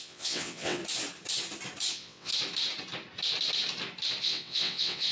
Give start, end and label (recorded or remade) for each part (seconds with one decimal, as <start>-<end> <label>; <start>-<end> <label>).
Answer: 0.0-0.8 remade; 0.8-1.9 recorded; 1.9-2.3 remade; 2.3-4.2 recorded; 4.2-5.1 remade